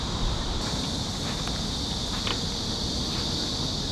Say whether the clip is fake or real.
real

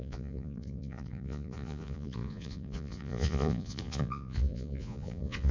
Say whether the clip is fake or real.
fake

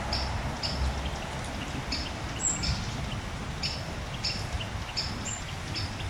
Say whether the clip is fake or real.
real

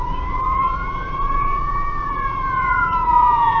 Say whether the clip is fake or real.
fake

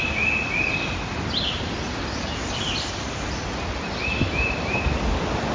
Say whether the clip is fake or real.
real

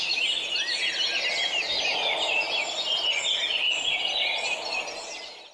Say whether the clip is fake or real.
real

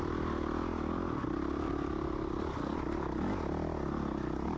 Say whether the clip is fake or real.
real